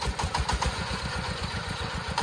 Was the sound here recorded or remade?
remade